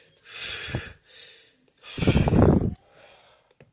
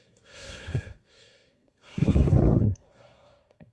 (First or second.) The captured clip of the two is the first